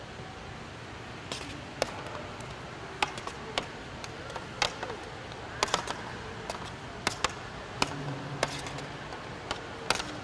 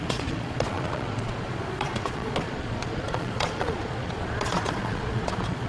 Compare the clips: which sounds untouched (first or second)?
first